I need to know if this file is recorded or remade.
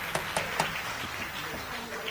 recorded